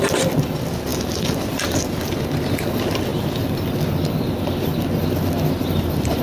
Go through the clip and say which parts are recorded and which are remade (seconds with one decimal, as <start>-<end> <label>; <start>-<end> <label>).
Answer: 0.0-6.2 recorded